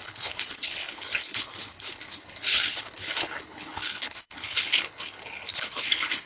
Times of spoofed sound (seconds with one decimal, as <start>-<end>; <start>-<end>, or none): 0.0-6.3